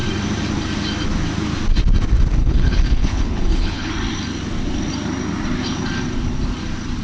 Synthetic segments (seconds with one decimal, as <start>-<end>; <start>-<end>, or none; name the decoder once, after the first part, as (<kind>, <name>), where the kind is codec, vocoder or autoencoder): 2.4-3.9 (codec, HILCodec)